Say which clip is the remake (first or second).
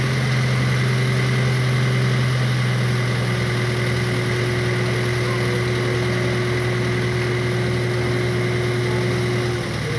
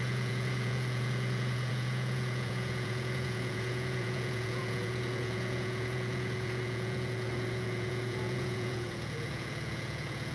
second